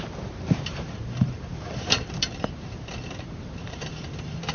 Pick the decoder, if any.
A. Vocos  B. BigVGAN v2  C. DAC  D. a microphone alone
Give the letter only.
B